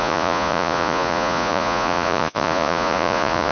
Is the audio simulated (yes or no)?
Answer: yes